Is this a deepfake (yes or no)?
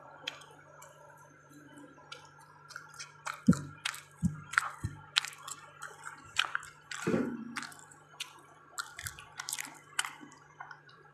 yes